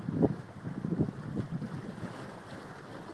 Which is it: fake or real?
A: real